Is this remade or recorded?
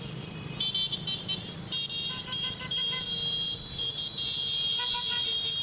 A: recorded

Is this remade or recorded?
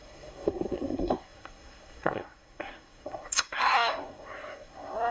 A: remade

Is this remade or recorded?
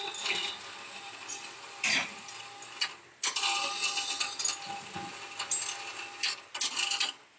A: recorded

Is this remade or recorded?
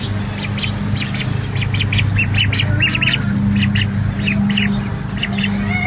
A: recorded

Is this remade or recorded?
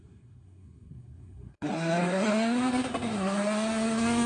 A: remade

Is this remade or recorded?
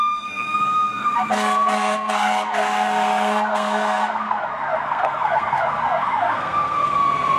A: remade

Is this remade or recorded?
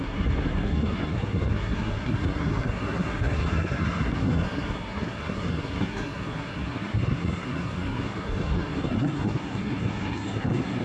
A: remade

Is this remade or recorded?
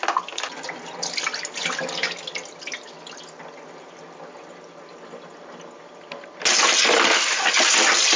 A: recorded